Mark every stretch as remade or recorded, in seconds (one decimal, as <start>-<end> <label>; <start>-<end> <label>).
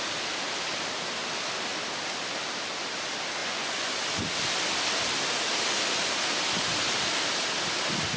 0.0-3.4 recorded; 3.4-3.9 remade; 3.9-8.2 recorded